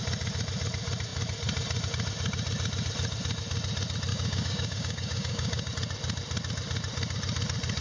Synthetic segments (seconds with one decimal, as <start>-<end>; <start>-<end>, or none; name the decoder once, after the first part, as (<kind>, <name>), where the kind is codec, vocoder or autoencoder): 4.1-5.7 (codec, DAC)